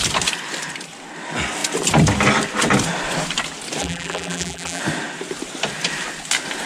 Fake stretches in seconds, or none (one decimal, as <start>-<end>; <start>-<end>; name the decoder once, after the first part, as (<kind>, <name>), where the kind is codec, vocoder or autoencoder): 3.8-4.8 (vocoder, BigVGAN v2)